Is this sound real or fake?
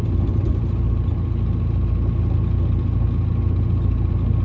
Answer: real